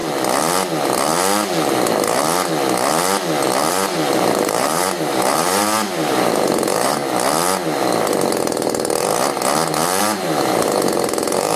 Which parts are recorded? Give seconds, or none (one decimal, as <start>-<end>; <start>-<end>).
0.0-3.7; 7.0-8.4; 9.1-10.0